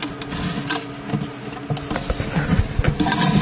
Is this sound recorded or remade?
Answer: recorded